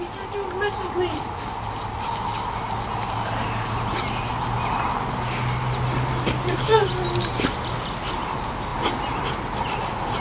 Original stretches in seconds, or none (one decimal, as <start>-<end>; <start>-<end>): 0.0-10.2